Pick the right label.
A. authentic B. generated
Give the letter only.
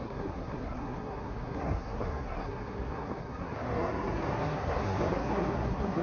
B